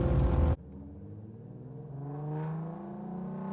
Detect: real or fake real